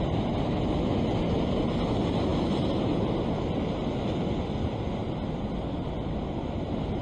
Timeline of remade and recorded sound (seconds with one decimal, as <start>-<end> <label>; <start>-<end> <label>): 0.0-7.0 recorded